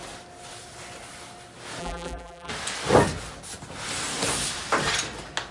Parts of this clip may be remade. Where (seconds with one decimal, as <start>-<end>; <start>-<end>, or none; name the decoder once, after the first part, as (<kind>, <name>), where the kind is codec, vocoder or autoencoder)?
1.8-2.5 (vocoder, BigVGAN v2)